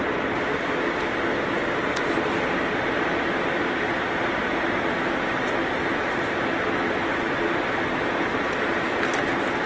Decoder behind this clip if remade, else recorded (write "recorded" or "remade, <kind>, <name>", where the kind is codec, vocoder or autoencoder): recorded